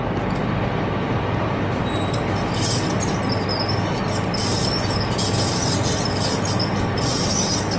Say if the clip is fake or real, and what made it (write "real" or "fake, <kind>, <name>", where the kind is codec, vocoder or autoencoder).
real